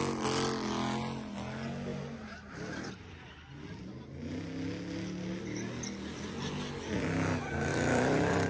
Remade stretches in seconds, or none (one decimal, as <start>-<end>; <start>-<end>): 7.7-8.5